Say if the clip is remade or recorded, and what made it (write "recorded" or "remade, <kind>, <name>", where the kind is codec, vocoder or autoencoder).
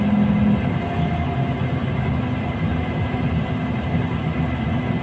recorded